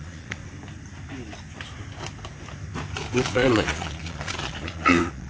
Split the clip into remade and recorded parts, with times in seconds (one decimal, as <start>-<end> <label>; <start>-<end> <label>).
0.0-0.4 remade; 0.4-3.1 recorded; 3.1-5.3 remade